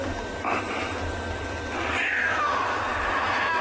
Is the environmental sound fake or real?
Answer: fake